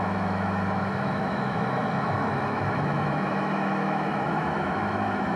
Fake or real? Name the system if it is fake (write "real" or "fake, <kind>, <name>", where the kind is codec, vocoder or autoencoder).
fake, autoencoder, DAC-VAE